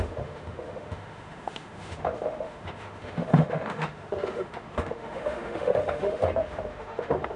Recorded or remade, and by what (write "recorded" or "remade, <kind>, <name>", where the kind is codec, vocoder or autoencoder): remade, autoencoder, DAC-VAE